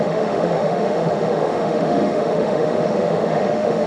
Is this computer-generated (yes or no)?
yes